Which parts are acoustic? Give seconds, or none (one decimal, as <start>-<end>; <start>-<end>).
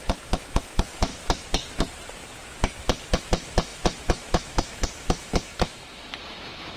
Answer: 1.1-3.2